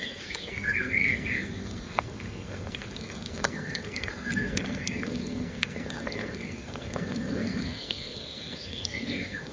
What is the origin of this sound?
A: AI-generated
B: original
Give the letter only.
A